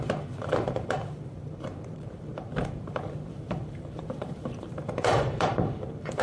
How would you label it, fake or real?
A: fake